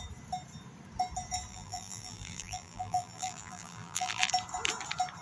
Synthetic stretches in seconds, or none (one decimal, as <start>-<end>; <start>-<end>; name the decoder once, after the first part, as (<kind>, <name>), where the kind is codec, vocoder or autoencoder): 1.5-4.3 (vocoder, BigVGAN v2)